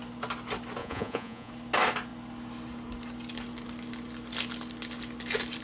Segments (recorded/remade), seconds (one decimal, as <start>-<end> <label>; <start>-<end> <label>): 0.0-0.8 recorded; 0.8-1.5 remade; 1.5-5.6 recorded